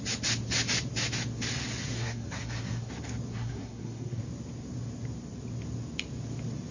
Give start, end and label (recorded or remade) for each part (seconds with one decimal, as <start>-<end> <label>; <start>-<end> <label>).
0.0-1.8 recorded; 1.8-2.9 remade; 2.9-3.3 recorded; 3.3-4.2 remade; 4.2-6.7 recorded